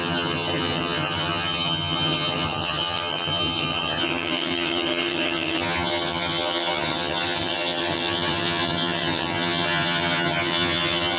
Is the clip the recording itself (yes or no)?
no